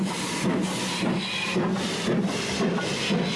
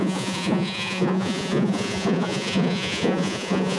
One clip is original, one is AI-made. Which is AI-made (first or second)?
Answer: second